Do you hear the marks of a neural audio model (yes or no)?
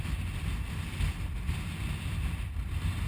no